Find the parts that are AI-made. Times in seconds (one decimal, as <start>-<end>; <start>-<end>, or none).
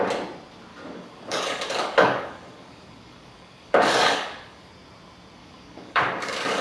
0.7-4.7; 5.4-6.6